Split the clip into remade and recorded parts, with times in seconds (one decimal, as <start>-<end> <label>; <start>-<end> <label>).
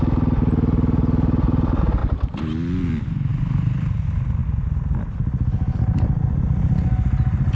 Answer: 0.0-2.0 recorded; 2.0-3.3 remade; 3.3-7.6 recorded